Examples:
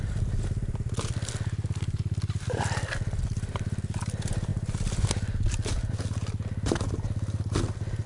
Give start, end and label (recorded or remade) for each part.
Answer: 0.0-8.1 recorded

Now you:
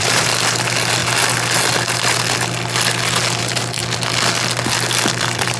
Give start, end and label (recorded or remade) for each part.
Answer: 0.0-1.0 remade; 1.0-3.4 recorded; 3.4-3.8 remade; 3.8-5.1 recorded; 5.1-5.6 remade

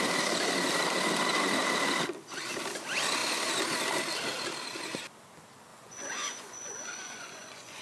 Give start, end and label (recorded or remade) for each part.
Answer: 0.0-5.7 recorded; 5.7-7.8 remade

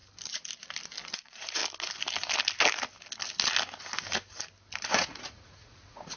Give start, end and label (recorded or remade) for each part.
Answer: 0.0-1.0 recorded; 1.0-1.6 remade; 1.6-4.9 recorded; 4.9-6.2 remade